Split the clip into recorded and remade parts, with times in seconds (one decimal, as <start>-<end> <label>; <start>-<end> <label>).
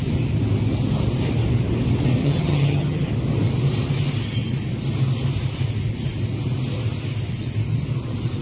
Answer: 0.0-2.2 recorded; 2.2-3.1 remade; 3.1-8.4 recorded